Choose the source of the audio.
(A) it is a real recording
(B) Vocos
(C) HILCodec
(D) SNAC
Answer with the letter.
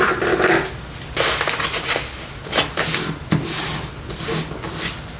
A